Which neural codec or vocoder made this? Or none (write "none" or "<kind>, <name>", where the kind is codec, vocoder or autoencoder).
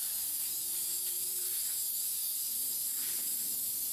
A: none